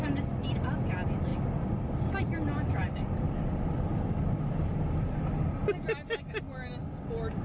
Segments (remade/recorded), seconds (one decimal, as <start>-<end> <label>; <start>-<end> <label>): 0.0-7.4 recorded